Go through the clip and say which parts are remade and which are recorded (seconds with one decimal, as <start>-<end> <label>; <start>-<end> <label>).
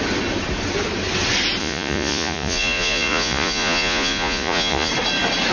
0.0-1.6 recorded; 1.6-4.9 remade; 4.9-5.5 recorded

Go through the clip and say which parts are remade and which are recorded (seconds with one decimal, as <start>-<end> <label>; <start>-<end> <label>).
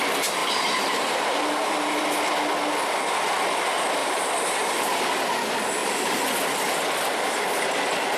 0.0-0.4 recorded; 0.4-1.4 remade; 1.4-4.0 recorded; 4.0-5.0 remade; 5.0-5.8 recorded; 5.8-6.3 remade; 6.3-8.2 recorded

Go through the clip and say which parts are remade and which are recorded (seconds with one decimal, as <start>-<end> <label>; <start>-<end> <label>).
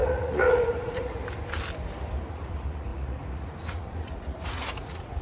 0.0-1.2 remade; 1.2-2.3 recorded; 2.3-5.2 remade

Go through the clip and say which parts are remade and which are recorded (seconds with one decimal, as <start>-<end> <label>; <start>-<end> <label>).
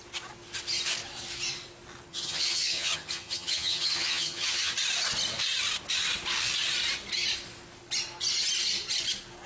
0.0-2.1 recorded; 2.1-4.7 remade; 4.7-9.5 recorded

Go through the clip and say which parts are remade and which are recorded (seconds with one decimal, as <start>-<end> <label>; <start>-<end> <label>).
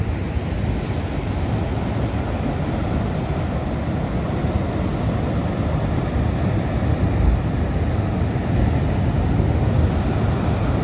0.0-10.8 recorded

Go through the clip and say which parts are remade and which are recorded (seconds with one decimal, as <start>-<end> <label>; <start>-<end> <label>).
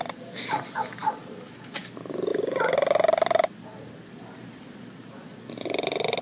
0.0-6.2 recorded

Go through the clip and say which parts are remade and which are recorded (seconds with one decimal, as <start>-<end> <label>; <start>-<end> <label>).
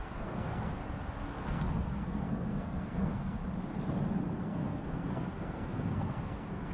0.0-0.8 remade; 0.8-1.3 recorded; 1.3-3.4 remade; 3.4-4.4 recorded; 4.4-6.7 remade